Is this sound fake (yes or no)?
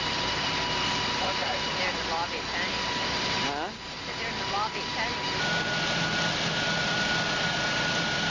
no